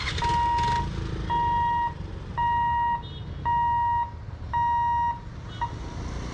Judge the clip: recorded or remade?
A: recorded